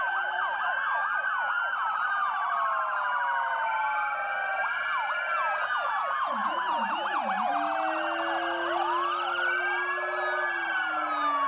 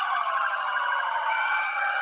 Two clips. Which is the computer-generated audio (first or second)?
second